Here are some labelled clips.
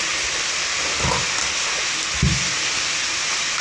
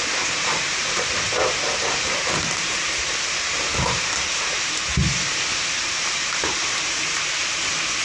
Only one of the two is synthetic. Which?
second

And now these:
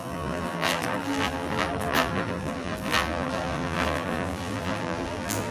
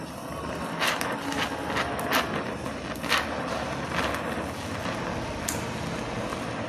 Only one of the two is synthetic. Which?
first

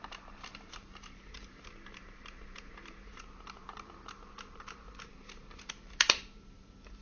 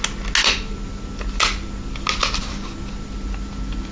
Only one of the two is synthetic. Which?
first